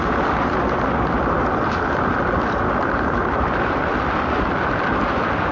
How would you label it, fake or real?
real